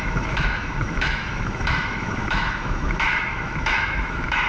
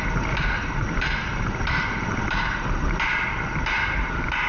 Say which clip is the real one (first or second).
second